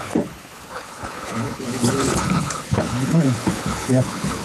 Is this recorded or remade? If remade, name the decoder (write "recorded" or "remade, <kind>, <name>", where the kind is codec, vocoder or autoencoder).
remade, codec, HILCodec